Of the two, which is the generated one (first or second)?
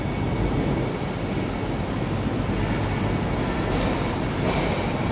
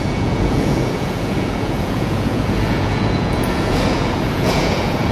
second